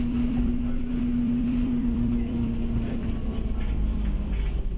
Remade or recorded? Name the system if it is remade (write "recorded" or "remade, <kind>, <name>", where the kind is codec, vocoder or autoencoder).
remade, vocoder, BigVGAN v2